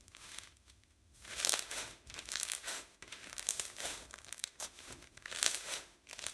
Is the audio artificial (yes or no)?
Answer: yes